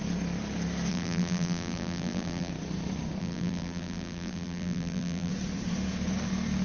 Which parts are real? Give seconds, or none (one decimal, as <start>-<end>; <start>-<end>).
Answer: 0.0-0.9; 2.5-3.2; 5.3-6.6

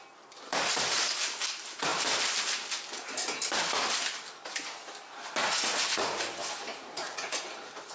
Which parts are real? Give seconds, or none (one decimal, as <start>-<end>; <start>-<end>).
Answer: 0.0-5.4; 6.3-6.7; 7.4-7.9